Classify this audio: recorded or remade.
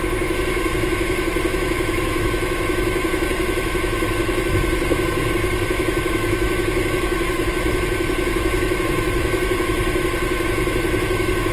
remade